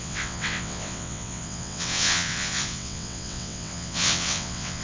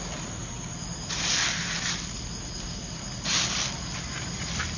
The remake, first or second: first